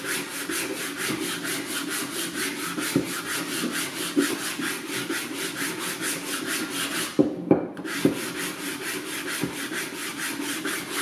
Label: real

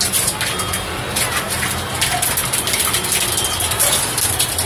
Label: real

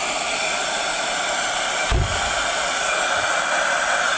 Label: real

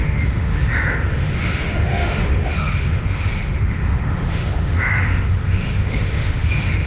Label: fake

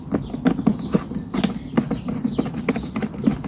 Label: real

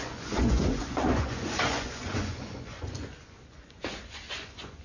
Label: fake